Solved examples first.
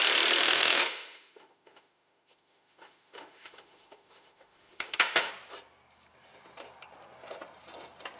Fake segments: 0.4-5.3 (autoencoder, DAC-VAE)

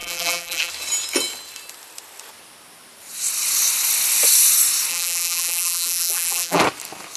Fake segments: 0.0-0.7 (vocoder, BigVGAN v2); 4.9-6.6